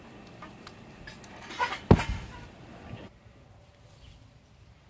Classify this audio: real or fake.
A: real